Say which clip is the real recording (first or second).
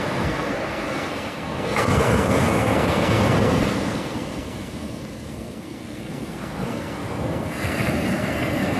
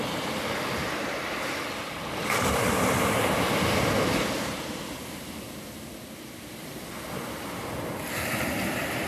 second